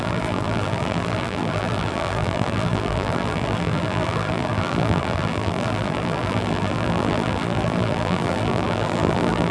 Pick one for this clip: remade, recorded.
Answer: remade